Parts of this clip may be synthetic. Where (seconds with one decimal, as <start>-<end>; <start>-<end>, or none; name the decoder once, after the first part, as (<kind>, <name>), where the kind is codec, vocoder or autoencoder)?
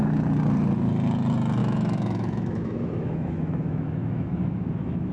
1.6-5.1 (autoencoder, DAC-VAE)